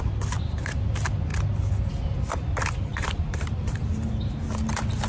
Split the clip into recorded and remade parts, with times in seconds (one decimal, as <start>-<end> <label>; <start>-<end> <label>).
0.0-2.9 recorded; 2.9-4.4 remade; 4.4-5.1 recorded